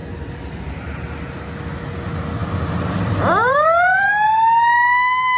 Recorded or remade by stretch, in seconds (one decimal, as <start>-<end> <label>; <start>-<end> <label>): 0.0-1.0 remade; 1.0-2.4 recorded; 2.4-4.1 remade; 4.1-5.4 recorded